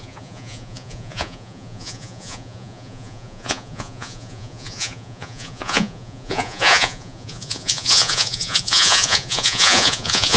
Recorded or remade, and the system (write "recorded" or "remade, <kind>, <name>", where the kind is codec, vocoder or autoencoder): remade, vocoder, Vocos